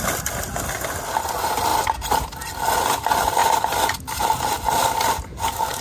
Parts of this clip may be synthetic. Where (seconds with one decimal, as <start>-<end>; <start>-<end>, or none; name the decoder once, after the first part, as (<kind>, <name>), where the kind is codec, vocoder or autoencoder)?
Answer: none